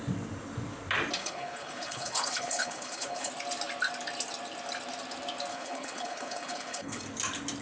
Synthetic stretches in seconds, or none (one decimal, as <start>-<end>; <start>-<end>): 1.2-3.3; 5.5-7.0